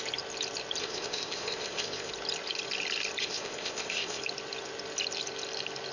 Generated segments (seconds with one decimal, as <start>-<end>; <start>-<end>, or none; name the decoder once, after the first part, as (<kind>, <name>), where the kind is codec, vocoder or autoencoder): 0.8-2.1 (codec, ZipCodec); 3.2-4.2